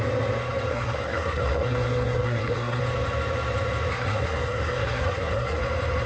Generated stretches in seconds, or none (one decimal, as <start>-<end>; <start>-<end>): 0.7-2.8; 3.9-5.6